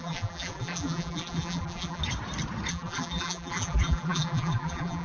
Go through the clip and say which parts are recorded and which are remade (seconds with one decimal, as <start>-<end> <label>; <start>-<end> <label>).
0.0-2.0 remade; 2.0-2.7 recorded; 2.7-5.0 remade